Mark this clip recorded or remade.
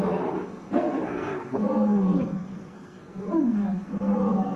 remade